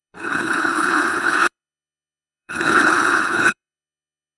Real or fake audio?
fake